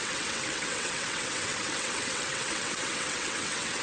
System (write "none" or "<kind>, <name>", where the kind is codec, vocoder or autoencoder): vocoder, WaveNeXt